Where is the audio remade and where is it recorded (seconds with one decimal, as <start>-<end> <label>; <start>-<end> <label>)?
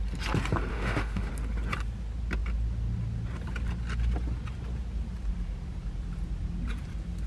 0.0-0.7 recorded; 0.7-1.3 remade; 1.3-7.3 recorded